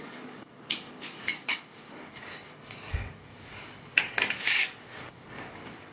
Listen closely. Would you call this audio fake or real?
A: fake